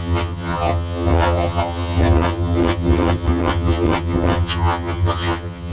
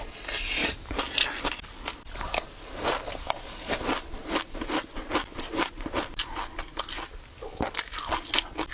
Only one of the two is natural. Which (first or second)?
second